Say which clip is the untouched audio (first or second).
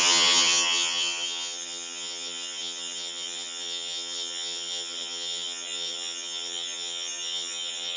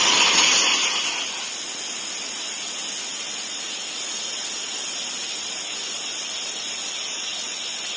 second